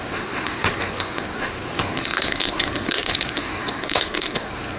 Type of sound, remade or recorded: remade